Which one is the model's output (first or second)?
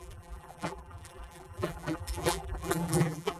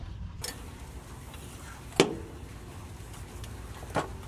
first